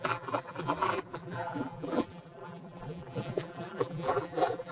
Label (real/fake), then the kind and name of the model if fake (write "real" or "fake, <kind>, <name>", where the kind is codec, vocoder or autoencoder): fake, vocoder, BigVGAN v2